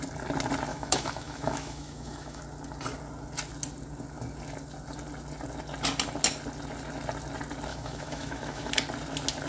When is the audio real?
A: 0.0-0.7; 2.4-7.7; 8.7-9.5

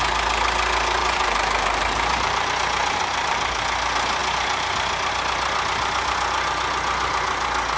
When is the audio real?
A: 0.0-1.0; 2.5-3.0; 3.6-7.8

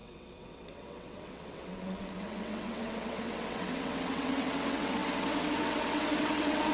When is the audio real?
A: none

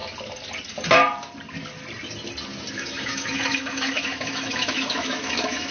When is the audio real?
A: 0.0-2.7

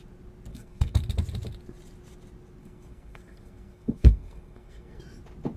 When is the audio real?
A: 0.0-0.5; 1.0-2.6; 5.0-5.6